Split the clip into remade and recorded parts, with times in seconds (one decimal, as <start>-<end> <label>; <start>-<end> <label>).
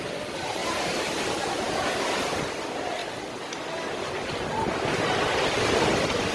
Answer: 0.0-0.6 recorded; 0.6-2.0 remade; 2.0-6.3 recorded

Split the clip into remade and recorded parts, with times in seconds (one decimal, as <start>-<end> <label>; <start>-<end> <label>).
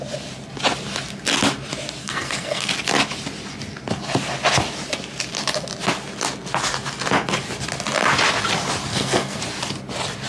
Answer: 0.0-2.0 recorded; 2.0-2.7 remade; 2.7-8.9 recorded; 8.9-9.4 remade; 9.4-10.3 recorded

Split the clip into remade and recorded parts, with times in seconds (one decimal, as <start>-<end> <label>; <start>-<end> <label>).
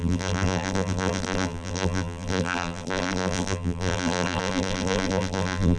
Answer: 0.0-5.8 remade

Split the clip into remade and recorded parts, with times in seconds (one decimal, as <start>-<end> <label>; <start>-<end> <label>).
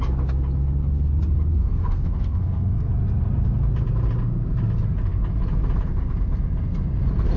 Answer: 0.0-1.6 recorded; 1.6-2.9 remade; 2.9-7.4 recorded